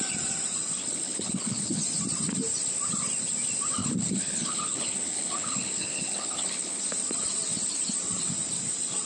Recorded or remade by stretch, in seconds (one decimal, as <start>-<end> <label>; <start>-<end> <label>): 0.0-0.8 recorded; 0.8-1.8 remade; 1.8-3.8 recorded; 3.8-6.8 remade; 6.8-9.1 recorded